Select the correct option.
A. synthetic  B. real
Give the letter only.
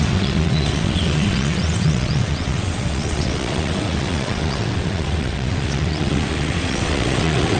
A